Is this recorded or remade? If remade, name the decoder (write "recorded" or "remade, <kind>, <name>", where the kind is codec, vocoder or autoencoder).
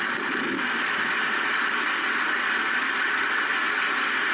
recorded